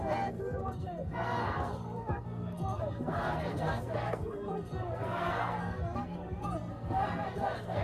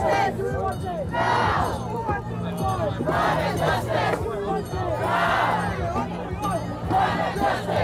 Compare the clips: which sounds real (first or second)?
second